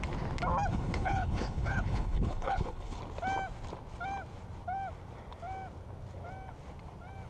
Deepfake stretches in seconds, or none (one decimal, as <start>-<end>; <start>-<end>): 0.7-3.0